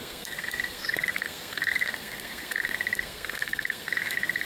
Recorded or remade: remade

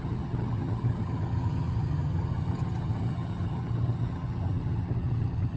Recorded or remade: remade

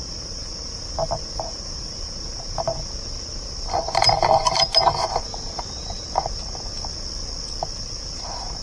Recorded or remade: recorded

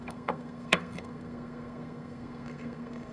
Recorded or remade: remade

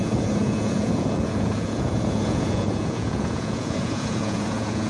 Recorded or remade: remade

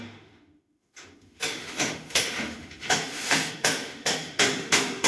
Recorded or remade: remade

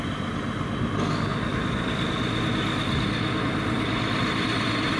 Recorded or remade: recorded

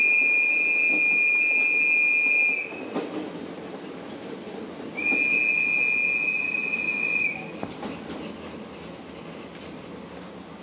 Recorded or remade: recorded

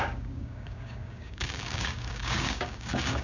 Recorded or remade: remade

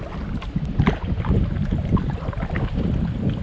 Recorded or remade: recorded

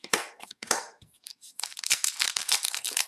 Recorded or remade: remade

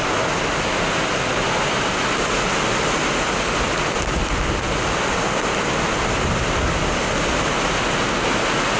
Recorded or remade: recorded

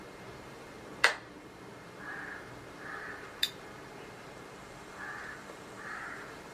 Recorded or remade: remade